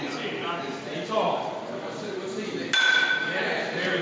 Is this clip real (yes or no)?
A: yes